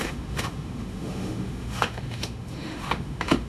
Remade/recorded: remade